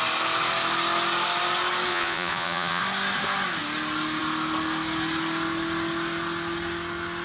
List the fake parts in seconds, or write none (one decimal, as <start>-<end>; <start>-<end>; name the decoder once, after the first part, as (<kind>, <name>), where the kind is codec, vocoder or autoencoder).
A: 1.9-2.8 (vocoder, Vocos)